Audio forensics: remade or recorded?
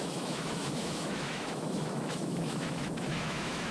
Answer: remade